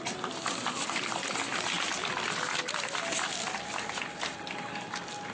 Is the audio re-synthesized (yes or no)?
no